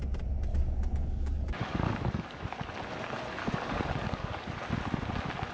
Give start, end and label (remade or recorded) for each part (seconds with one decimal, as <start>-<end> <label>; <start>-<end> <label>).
0.0-0.5 recorded; 0.5-2.7 remade; 2.7-3.4 recorded; 3.4-4.5 remade; 4.5-5.5 recorded